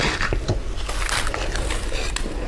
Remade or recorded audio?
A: recorded